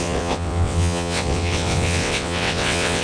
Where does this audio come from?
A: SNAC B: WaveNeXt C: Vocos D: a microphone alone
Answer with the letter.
B